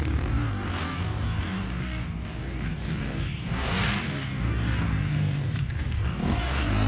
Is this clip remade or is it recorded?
remade